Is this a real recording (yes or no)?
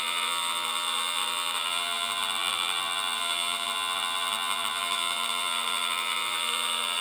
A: no